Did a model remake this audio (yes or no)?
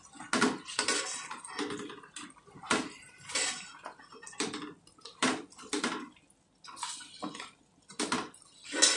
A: no